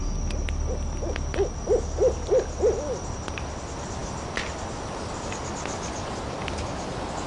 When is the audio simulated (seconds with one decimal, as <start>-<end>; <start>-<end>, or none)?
none